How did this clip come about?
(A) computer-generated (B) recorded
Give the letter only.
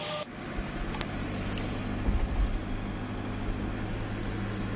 B